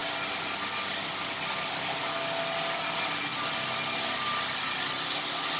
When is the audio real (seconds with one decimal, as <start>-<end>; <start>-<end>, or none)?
0.0-5.6